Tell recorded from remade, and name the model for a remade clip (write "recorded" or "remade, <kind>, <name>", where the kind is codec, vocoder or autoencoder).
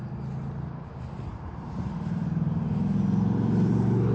recorded